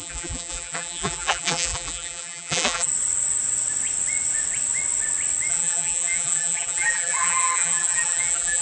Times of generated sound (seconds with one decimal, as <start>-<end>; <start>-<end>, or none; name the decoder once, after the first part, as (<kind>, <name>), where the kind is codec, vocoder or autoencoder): 0.0-2.9 (vocoder, BigVGAN v2); 5.5-8.6